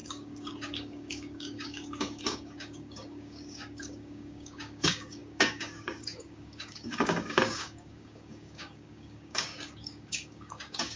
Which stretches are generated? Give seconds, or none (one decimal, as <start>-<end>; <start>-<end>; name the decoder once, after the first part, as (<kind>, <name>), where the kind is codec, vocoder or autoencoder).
0.0-11.0 (codec, DAC)